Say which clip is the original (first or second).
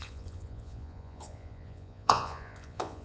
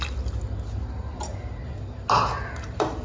second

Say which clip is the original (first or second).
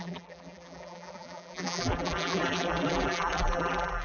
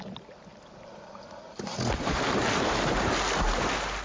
second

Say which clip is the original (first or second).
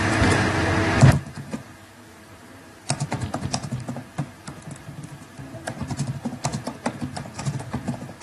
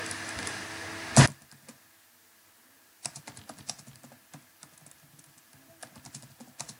second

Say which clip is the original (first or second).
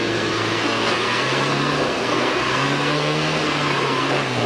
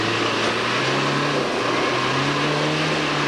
second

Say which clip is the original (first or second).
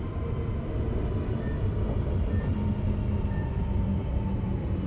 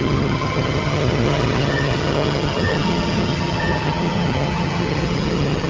first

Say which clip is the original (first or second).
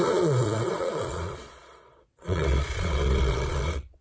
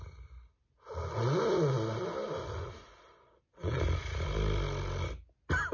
second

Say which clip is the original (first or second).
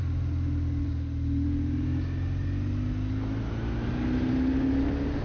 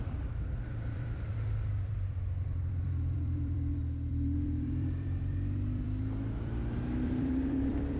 first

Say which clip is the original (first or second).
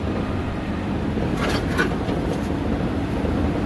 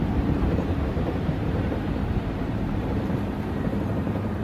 first